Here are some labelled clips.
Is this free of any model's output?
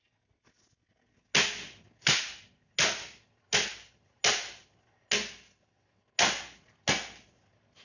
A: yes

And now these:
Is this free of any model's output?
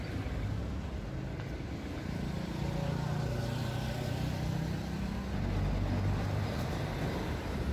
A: yes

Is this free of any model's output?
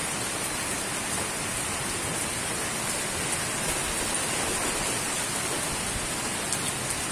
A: yes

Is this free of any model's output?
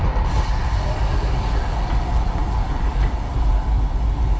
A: yes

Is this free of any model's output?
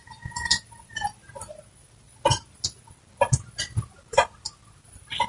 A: yes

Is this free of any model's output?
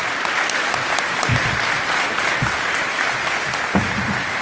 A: yes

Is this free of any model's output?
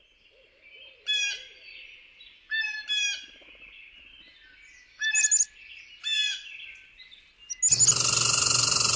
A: yes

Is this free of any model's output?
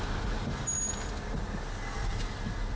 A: yes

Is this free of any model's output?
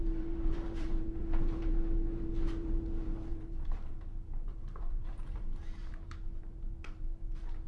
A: no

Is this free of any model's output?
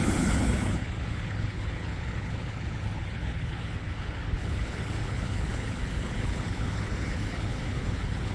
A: no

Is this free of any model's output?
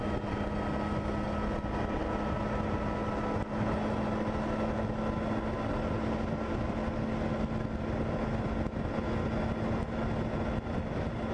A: yes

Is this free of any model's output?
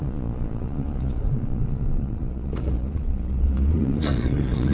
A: no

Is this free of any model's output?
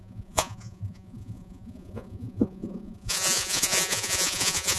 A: no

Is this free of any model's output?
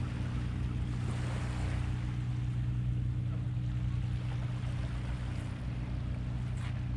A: yes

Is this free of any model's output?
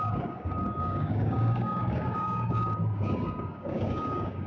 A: no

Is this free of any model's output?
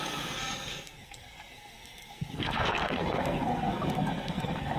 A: no